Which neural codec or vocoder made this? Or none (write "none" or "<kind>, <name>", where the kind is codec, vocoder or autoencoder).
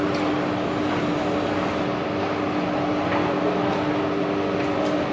none